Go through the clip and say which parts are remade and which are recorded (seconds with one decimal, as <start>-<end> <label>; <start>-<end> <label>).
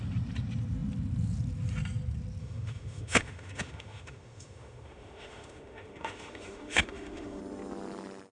0.0-2.4 recorded; 2.4-7.4 remade; 7.4-8.3 recorded